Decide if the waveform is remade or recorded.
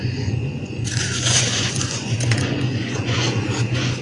remade